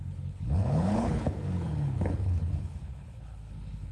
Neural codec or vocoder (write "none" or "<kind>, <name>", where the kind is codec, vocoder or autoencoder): codec, HILCodec